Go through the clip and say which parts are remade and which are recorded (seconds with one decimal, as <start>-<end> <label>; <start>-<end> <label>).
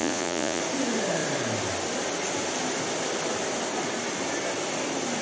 0.0-0.6 remade; 0.6-5.2 recorded